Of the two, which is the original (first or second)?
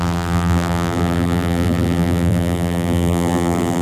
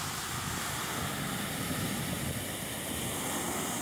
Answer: second